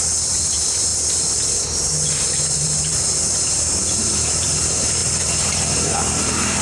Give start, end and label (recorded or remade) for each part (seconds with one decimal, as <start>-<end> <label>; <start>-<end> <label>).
0.0-6.6 remade